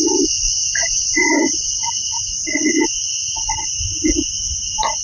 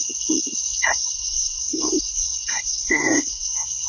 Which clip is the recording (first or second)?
first